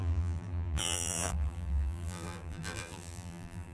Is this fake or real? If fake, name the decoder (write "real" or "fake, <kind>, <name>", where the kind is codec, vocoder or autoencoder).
fake, vocoder, BigVGAN v2